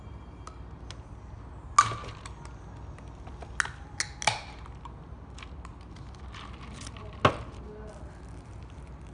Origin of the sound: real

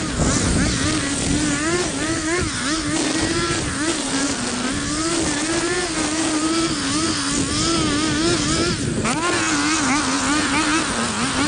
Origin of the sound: real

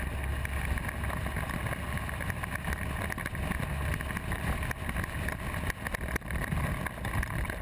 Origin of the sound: real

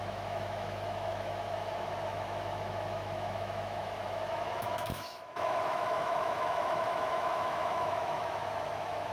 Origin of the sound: fake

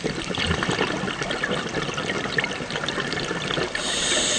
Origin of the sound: real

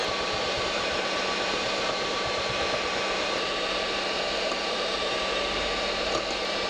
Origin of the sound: fake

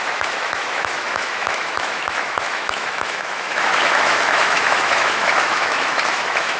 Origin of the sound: fake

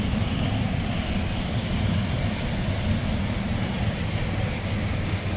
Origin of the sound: real